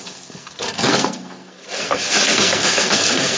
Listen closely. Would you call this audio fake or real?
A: fake